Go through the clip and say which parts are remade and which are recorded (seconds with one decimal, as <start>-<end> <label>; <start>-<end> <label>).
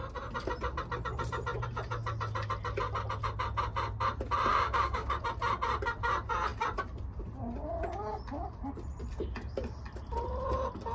0.0-4.5 recorded; 4.5-5.2 remade; 5.2-10.9 recorded